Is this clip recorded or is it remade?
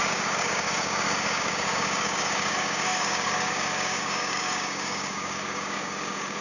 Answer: remade